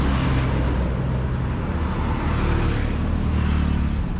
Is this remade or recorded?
recorded